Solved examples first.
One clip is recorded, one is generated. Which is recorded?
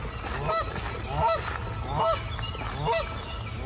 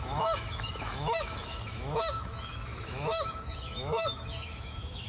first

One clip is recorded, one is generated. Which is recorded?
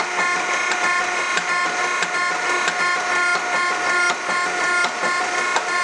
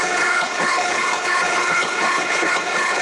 first